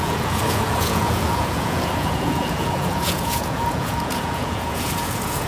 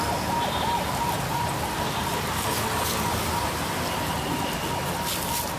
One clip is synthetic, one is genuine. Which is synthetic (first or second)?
first